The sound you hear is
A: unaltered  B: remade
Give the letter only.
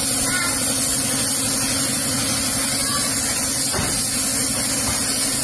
A